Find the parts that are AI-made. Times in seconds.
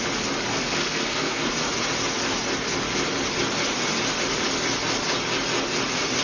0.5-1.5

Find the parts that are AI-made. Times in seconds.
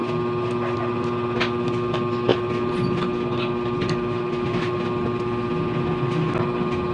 none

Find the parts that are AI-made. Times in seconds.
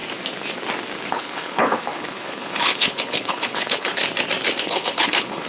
1.1-4.0; 4.6-5.5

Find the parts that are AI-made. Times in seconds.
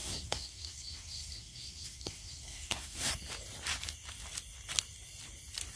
0.0-3.1